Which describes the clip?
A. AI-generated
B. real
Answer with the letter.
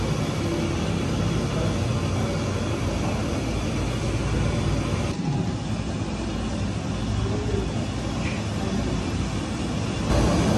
B